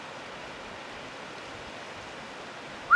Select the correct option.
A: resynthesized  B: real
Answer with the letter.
B